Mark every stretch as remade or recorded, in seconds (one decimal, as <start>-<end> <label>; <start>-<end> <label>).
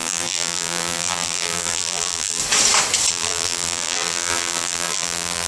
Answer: 0.0-2.4 remade; 2.4-3.1 recorded; 3.1-5.5 remade